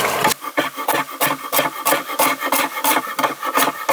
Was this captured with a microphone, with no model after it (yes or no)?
yes